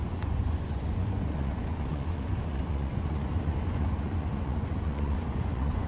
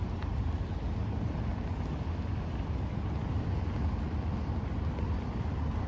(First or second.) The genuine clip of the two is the second